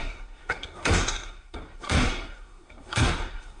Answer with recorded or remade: remade